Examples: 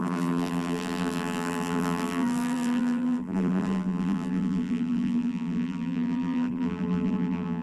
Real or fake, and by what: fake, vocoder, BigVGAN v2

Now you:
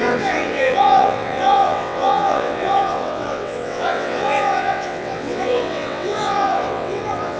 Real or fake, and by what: fake, vocoder, WaveNeXt